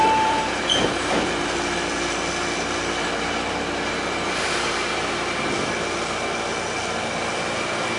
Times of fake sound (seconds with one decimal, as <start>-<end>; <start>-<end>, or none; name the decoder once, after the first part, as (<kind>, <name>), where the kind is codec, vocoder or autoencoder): 0.0-1.3 (vocoder, BigVGAN v2)